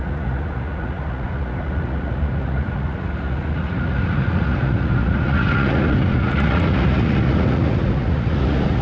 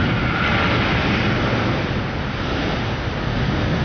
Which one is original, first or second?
second